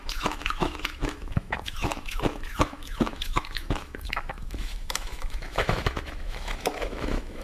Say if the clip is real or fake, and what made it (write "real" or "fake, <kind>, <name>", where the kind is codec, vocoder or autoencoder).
fake, autoencoder, DAC-VAE